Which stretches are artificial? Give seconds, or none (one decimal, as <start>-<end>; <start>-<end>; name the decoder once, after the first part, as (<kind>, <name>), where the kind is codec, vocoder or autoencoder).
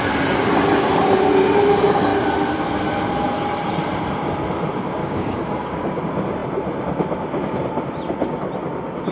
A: 5.0-6.0 (codec, DAC)